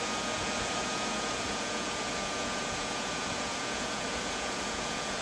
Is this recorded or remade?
remade